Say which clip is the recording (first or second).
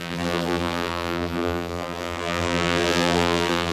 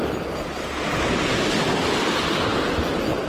second